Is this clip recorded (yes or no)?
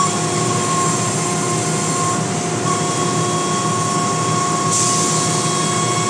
yes